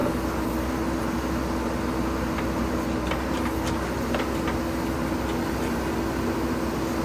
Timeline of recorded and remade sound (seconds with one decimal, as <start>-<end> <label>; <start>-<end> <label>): 0.0-7.0 recorded